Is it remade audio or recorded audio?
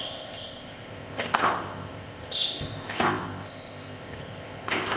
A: remade